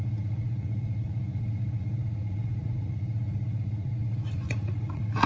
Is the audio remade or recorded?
remade